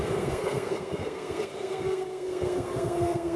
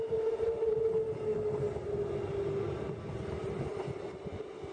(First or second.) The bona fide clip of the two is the second